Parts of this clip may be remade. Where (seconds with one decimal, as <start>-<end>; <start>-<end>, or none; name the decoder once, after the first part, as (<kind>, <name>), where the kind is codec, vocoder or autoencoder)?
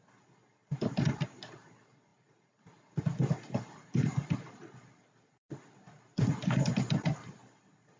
none